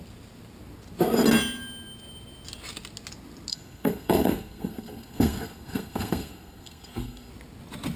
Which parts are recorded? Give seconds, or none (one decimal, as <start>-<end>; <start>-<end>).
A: 0.0-3.5; 7.3-8.0